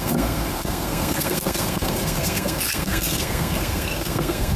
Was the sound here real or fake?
fake